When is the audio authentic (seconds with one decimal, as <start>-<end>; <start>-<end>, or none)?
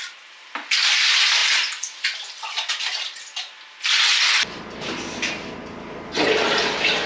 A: 0.0-7.1